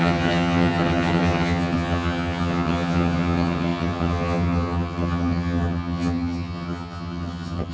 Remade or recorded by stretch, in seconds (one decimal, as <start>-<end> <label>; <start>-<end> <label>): 0.0-7.7 remade